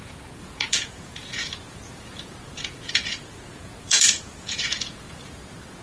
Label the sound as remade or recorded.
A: remade